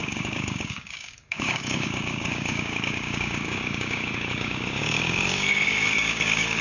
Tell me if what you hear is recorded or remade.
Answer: remade